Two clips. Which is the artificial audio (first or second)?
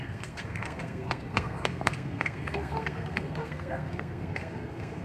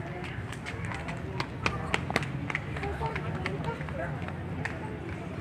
first